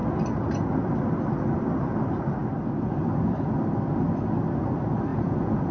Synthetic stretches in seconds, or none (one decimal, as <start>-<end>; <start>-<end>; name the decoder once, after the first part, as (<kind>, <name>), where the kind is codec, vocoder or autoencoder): 5.1-5.7 (vocoder, Vocos)